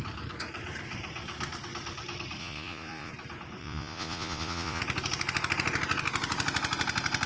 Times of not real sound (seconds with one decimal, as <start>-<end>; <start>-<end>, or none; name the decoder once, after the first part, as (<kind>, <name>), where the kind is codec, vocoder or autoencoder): 2.4-3.1 (vocoder, Vocos); 3.6-4.8